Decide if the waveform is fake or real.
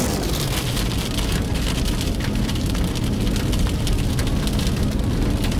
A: real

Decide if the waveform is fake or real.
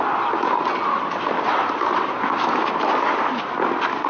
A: real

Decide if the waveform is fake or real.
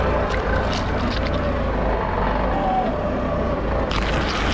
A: real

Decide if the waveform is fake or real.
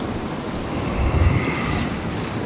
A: real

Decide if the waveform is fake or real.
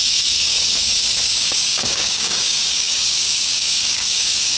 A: fake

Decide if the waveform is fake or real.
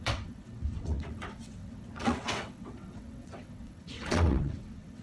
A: fake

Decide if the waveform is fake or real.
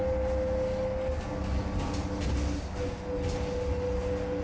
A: real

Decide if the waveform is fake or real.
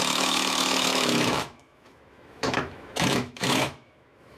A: fake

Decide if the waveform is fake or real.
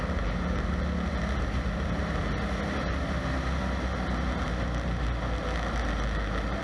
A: real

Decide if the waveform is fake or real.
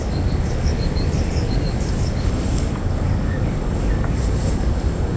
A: fake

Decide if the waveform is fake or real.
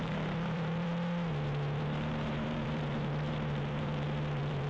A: fake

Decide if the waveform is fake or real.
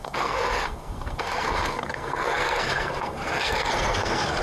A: fake